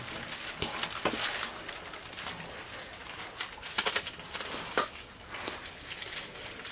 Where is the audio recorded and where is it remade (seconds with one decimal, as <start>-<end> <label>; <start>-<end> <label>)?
0.0-6.7 recorded